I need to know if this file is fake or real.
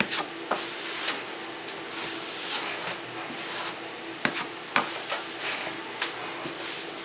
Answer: real